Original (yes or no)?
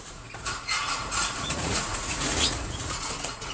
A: no